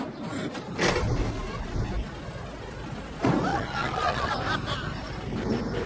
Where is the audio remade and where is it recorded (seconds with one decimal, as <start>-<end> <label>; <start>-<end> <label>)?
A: 0.0-3.5 recorded; 3.5-4.3 remade; 4.3-5.9 recorded